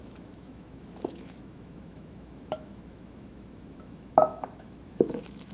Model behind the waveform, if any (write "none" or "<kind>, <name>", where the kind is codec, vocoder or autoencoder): autoencoder, DAC-VAE